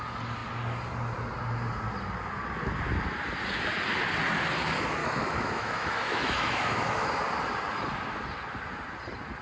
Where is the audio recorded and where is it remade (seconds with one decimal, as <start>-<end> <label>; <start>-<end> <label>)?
0.0-5.0 recorded; 5.0-7.1 remade; 7.1-9.4 recorded